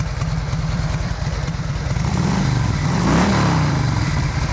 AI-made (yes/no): yes